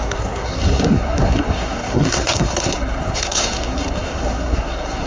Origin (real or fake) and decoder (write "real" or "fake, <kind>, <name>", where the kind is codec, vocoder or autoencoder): fake, codec, SNAC